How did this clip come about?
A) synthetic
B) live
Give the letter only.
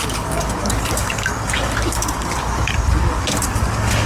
A